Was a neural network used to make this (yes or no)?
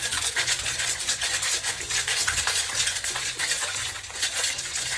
yes